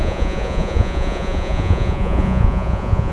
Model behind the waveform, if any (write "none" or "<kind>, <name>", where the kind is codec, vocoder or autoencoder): vocoder, Vocos